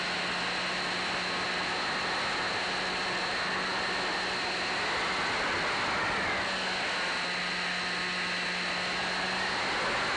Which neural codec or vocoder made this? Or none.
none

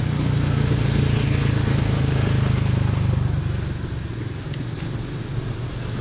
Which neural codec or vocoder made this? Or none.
none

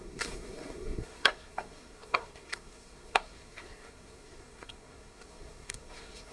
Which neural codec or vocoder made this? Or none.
codec, SNAC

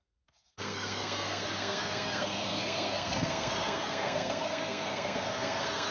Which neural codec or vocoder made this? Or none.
codec, SNAC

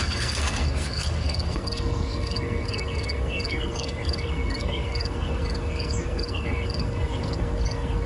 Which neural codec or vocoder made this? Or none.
codec, SNAC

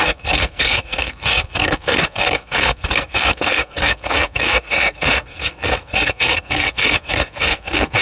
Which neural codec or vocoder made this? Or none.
codec, SNAC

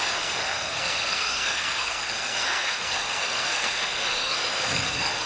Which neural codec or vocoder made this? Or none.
codec, SNAC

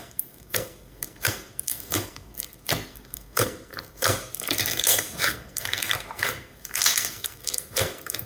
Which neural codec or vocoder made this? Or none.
codec, SNAC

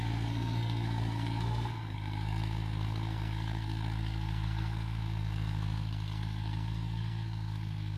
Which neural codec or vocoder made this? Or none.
codec, SNAC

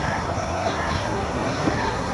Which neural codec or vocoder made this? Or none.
codec, SNAC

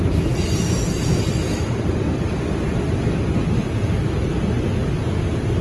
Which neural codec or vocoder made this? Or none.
none